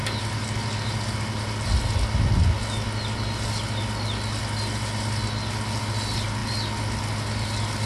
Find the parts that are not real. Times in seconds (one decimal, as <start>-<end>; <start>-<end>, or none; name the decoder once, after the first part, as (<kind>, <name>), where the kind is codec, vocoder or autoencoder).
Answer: none